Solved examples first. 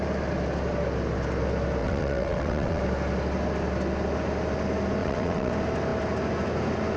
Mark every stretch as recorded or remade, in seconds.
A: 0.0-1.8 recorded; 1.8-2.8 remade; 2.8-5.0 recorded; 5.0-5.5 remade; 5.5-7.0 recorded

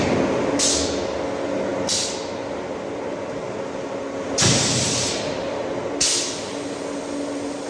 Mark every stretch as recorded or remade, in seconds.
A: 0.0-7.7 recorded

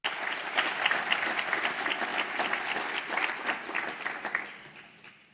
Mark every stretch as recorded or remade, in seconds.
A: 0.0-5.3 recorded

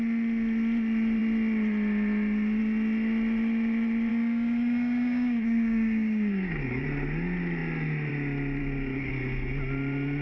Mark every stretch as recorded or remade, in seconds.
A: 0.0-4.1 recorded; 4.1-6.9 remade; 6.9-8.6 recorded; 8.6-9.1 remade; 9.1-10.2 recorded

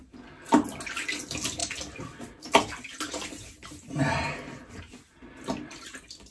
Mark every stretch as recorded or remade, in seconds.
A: 0.0-1.6 recorded; 1.6-4.8 remade; 4.8-6.3 recorded

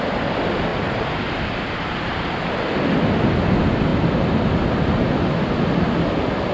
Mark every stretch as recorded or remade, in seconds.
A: 0.0-0.7 recorded; 0.7-2.5 remade; 2.5-6.5 recorded